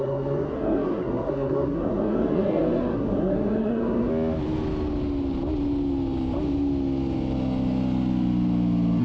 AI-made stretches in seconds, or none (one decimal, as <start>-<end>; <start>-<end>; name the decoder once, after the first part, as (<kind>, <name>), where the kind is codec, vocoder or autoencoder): 0.0-4.1 (codec, SNAC)